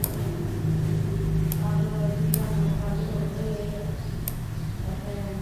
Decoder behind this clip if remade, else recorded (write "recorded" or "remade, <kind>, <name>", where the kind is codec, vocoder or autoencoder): recorded